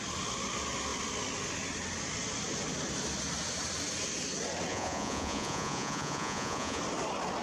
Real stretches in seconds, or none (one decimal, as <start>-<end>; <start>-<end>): 0.0-4.7; 6.8-7.4